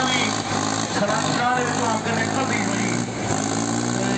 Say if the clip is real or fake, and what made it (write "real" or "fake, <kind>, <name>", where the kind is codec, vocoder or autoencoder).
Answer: real